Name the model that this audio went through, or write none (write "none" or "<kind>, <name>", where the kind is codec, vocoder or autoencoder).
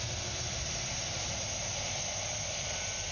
none